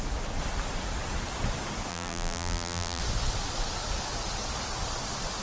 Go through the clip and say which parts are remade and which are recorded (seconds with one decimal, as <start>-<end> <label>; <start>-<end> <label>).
0.0-1.9 recorded; 1.9-3.0 remade; 3.0-5.4 recorded